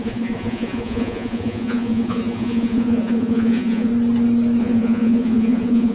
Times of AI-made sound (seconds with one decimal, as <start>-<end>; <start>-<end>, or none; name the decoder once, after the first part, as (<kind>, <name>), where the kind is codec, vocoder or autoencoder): 0.0-3.9 (vocoder, Vocos); 4.6-5.9